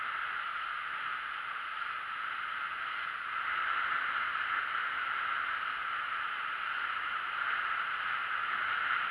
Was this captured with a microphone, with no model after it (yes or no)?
yes